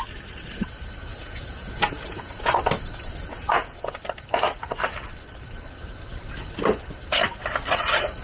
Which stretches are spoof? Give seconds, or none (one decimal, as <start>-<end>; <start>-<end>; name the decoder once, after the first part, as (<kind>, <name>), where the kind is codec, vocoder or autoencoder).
1.1-2.5 (vocoder, Vocos); 3.3-3.9